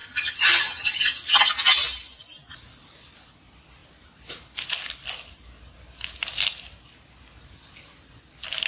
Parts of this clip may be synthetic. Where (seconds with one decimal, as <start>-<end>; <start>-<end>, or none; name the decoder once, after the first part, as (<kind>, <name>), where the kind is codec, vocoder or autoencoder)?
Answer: 0.0-1.5 (vocoder, HiFi-GAN)